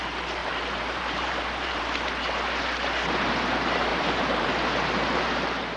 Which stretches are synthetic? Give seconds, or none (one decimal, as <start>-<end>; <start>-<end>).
0.4-1.8; 3.9-4.5